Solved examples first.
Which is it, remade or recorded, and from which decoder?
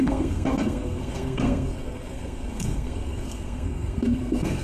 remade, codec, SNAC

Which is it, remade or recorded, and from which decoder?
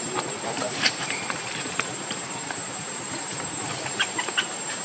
remade, vocoder, BigVGAN v2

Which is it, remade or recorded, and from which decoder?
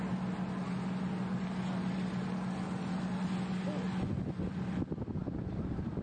recorded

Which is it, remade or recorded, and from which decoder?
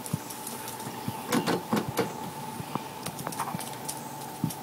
recorded